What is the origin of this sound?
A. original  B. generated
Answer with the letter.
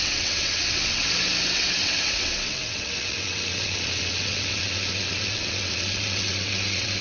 B